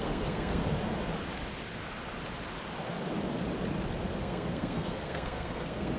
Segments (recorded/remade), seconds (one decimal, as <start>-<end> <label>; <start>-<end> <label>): 0.0-0.6 remade; 0.6-4.2 recorded; 4.2-6.0 remade